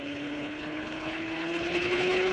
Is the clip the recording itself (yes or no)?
no